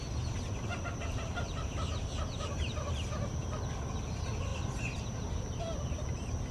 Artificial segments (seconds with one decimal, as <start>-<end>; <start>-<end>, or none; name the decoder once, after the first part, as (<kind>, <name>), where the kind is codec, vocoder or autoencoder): 0.7-3.5 (vocoder, BigVGAN v2); 4.5-5.3